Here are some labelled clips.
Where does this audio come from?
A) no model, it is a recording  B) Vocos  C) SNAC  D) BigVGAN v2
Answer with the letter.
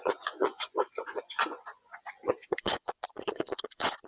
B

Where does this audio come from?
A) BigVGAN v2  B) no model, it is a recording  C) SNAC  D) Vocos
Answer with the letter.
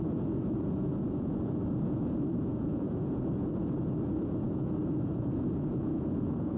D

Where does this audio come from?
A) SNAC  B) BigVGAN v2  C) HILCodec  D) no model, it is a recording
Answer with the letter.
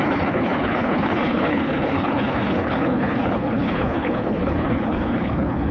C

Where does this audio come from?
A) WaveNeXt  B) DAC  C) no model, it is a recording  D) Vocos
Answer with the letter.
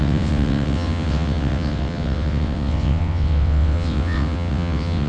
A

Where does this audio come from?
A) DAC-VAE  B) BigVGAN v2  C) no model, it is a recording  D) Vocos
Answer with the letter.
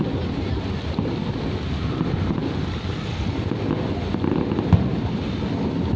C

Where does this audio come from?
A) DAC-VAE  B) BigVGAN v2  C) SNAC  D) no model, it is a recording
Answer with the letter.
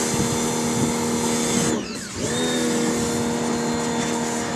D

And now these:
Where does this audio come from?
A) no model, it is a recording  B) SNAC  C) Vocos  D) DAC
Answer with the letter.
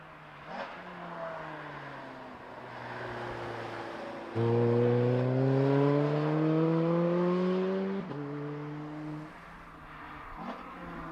A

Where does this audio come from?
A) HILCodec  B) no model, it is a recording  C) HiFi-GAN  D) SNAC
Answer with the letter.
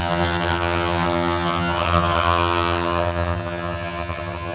C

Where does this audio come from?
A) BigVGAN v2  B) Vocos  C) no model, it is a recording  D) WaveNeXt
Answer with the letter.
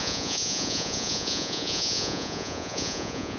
B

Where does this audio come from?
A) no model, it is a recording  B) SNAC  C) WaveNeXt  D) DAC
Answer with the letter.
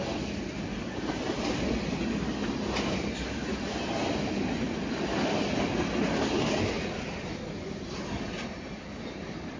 A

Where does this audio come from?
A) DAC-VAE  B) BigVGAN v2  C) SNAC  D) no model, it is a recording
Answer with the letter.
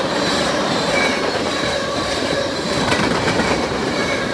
B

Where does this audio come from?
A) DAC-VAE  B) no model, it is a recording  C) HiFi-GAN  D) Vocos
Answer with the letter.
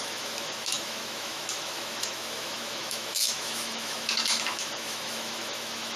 A